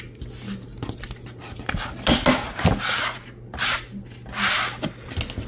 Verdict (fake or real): real